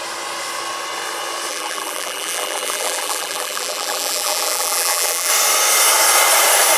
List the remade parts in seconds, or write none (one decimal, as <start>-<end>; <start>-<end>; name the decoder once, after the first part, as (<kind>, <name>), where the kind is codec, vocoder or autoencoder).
1.5-5.3 (vocoder, BigVGAN v2)

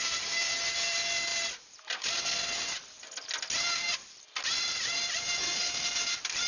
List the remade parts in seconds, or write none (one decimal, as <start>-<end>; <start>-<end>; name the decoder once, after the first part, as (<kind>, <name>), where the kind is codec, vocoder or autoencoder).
5.5-6.5 (vocoder, BigVGAN v2)

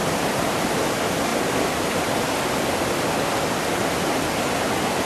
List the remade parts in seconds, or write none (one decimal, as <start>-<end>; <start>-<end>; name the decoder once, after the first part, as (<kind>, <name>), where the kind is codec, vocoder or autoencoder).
0.0-0.8 (vocoder, BigVGAN v2)

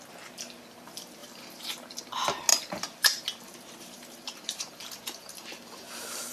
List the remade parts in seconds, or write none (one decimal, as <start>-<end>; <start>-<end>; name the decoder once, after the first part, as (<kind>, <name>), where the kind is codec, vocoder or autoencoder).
1.2-1.9 (vocoder, BigVGAN v2); 2.5-6.3

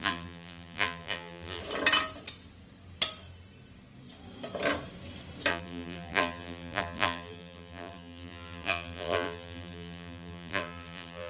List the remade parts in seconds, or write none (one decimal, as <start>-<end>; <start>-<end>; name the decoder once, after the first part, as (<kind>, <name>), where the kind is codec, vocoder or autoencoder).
0.0-1.6 (vocoder, BigVGAN v2); 5.5-11.3

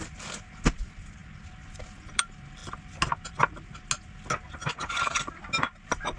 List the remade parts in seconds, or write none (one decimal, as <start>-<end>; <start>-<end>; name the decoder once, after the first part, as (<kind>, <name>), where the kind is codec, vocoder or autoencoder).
4.6-5.4 (vocoder, BigVGAN v2)

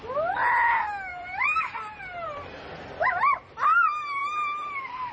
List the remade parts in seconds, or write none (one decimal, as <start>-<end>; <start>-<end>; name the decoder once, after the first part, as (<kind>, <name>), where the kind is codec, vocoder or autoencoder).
1.1-2.7 (vocoder, BigVGAN v2)